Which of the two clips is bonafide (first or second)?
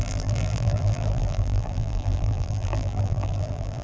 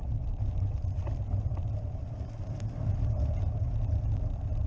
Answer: second